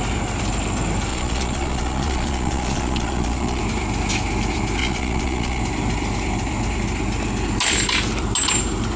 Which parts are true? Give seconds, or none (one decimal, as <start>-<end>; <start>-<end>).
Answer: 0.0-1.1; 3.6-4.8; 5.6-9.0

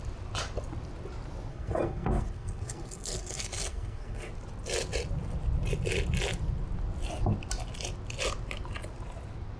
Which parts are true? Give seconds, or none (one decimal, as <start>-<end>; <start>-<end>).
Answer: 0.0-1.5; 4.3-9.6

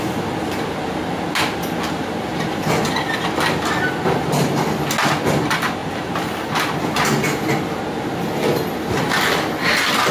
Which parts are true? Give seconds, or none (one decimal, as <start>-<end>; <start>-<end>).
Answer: 0.0-2.3; 2.9-5.8; 6.6-10.1

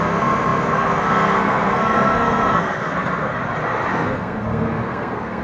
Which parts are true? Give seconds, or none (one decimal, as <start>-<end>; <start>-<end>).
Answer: 3.3-3.9

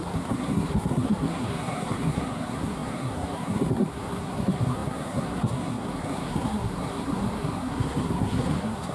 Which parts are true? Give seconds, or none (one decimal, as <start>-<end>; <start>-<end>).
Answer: none

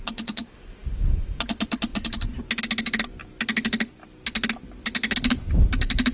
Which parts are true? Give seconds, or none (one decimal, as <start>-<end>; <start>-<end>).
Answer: 3.2-5.3